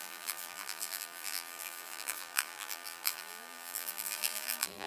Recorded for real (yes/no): no